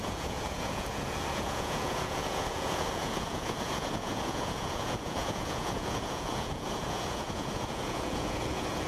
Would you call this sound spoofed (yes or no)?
yes